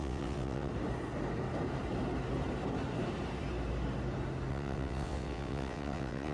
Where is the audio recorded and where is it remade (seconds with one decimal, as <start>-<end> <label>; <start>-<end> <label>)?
0.0-0.7 remade; 0.7-4.5 recorded; 4.5-6.3 remade